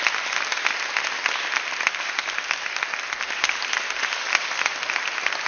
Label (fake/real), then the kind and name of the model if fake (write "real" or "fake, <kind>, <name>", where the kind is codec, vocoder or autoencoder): real